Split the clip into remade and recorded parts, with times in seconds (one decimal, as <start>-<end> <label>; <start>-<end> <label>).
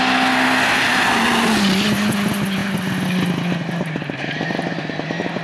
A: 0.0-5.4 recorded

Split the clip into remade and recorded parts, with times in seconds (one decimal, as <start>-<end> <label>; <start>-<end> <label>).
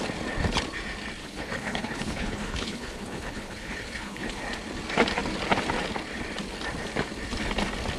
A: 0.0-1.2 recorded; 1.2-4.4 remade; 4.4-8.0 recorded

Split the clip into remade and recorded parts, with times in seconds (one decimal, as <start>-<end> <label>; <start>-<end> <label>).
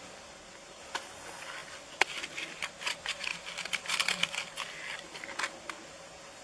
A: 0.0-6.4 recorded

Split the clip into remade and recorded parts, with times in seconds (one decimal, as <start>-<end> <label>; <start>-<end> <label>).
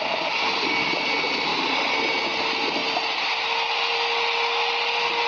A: 0.0-5.3 recorded